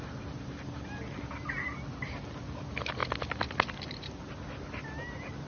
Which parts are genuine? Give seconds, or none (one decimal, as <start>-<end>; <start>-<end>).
0.0-5.5